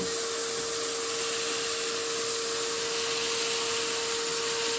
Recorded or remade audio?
recorded